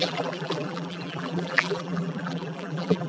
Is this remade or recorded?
remade